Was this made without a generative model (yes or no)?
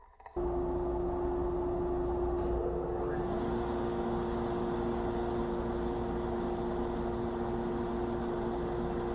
yes